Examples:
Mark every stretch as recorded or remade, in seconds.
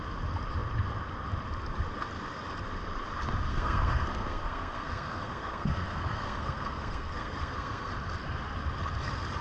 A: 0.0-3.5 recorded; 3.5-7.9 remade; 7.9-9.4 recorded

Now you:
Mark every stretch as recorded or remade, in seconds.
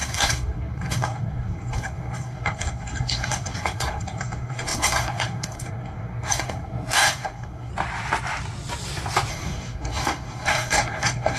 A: 0.0-7.7 remade; 7.7-9.3 recorded; 9.3-11.4 remade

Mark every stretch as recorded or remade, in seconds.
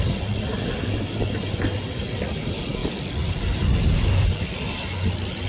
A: 0.0-5.5 recorded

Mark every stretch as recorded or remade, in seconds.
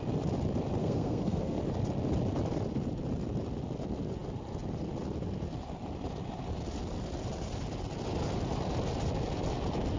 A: 0.0-0.8 recorded; 0.8-1.6 remade; 1.6-10.0 recorded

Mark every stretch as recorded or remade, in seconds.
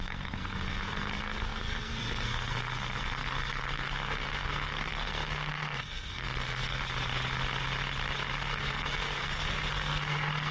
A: 0.0-6.8 remade; 6.8-8.3 recorded; 8.3-10.5 remade